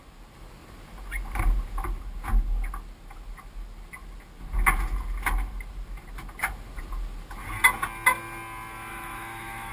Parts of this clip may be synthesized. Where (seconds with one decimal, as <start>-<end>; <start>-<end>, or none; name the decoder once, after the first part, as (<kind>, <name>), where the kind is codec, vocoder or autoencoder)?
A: 8.9-9.7 (autoencoder, DAC-VAE)